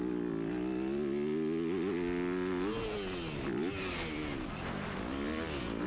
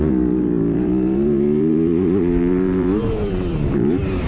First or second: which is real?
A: first